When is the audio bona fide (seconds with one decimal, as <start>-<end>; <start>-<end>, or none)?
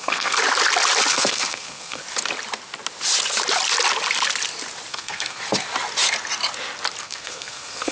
0.4-1.1; 2.0-4.9; 5.4-7.0